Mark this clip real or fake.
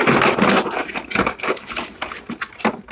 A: real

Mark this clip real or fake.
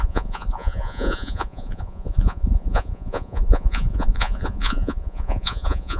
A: fake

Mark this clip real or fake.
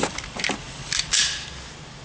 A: real